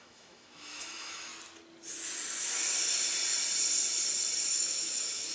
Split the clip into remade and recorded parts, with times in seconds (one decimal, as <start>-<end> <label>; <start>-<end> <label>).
0.0-1.3 remade; 1.3-4.5 recorded; 4.5-5.3 remade